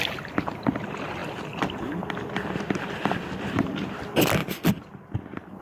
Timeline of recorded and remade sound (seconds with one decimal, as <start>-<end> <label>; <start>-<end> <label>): 0.0-5.6 recorded